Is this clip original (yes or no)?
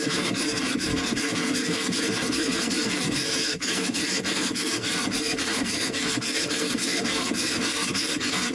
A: no